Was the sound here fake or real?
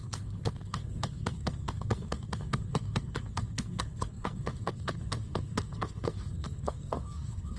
fake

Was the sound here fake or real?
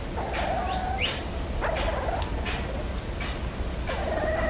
real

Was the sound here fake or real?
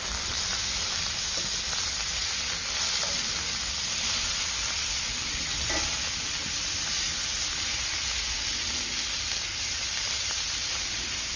real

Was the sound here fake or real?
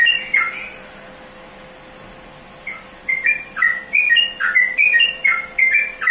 real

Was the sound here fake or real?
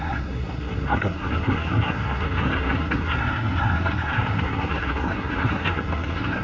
fake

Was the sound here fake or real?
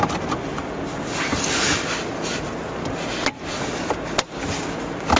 real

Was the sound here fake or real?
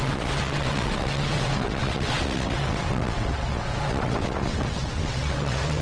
fake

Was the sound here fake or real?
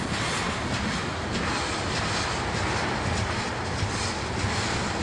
real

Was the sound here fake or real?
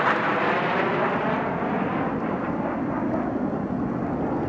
real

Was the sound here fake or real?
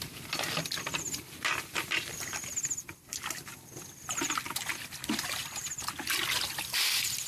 real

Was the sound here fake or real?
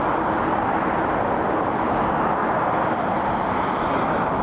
real